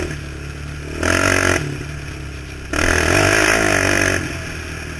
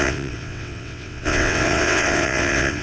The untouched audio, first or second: first